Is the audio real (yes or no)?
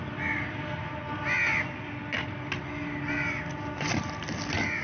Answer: yes